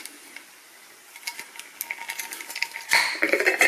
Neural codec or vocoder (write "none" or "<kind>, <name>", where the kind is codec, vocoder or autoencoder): none